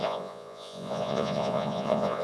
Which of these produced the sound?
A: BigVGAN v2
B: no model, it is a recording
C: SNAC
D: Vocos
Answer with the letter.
D